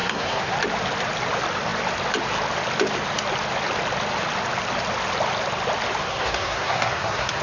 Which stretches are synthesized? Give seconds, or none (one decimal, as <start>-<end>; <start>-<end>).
0.0-0.5; 6.0-7.4